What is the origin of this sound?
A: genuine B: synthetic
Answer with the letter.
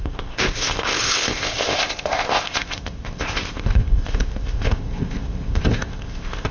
B